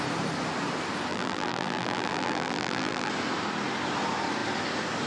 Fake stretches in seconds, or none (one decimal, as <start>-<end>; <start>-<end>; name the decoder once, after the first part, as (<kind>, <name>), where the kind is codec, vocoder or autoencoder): 1.1-3.1 (vocoder, BigVGAN v2)